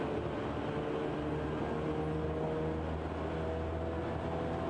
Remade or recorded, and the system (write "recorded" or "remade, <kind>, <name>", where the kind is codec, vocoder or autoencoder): recorded